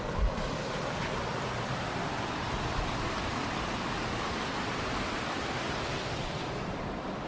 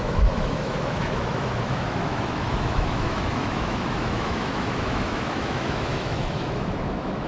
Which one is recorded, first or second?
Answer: first